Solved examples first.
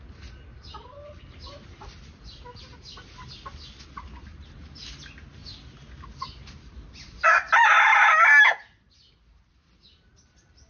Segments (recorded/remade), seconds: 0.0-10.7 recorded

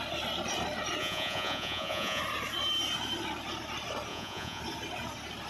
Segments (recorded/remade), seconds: 0.0-1.0 recorded; 1.0-2.2 remade; 2.2-4.1 recorded; 4.1-4.6 remade; 4.6-5.5 recorded

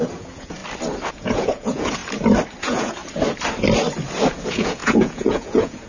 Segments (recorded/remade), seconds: 0.0-0.6 remade; 0.6-1.1 recorded; 1.1-2.0 remade; 2.0-2.6 recorded; 2.6-3.0 remade; 3.0-4.3 recorded; 4.3-5.9 remade

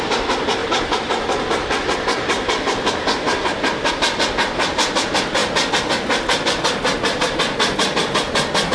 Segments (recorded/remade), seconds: 0.0-8.7 recorded

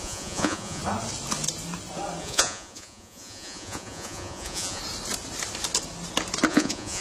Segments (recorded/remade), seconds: 0.0-0.8 remade; 0.8-2.2 recorded; 2.2-4.8 remade; 4.8-6.5 recorded; 6.5-7.0 remade

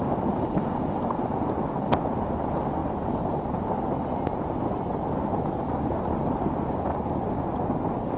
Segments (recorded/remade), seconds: 0.0-8.2 recorded

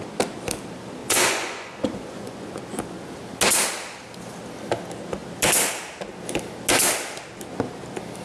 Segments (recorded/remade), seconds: 0.0-1.0 recorded; 1.0-2.6 remade; 2.6-8.2 recorded